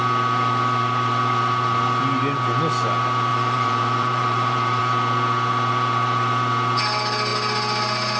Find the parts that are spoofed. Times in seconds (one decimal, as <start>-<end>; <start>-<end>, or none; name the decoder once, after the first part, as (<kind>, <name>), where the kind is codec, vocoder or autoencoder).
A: 3.3-4.8 (vocoder, BigVGAN v2)